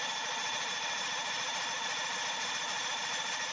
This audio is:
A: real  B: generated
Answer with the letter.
A